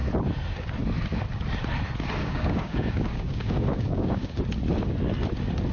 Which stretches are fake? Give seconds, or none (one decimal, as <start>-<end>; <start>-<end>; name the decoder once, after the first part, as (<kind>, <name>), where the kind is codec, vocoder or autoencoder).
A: 2.2-4.4 (codec, DAC)